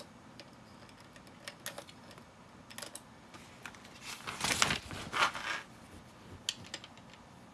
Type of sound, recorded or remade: recorded